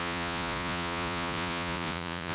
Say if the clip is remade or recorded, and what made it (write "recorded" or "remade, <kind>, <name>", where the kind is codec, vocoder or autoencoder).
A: remade, vocoder, Vocos